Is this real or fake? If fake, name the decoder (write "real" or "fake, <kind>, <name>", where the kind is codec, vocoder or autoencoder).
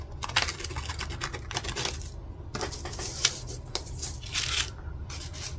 real